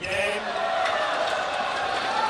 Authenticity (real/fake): fake